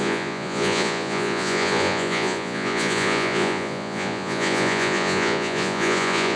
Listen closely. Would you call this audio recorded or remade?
remade